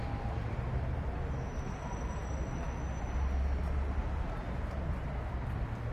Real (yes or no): yes